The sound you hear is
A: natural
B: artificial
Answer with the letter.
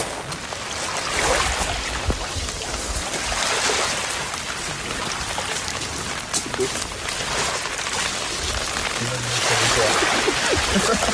A